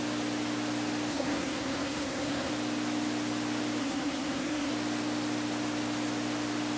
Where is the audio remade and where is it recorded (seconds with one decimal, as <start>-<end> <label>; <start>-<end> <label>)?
0.0-1.1 recorded; 1.1-2.5 remade; 2.5-3.8 recorded; 3.8-4.7 remade; 4.7-6.8 recorded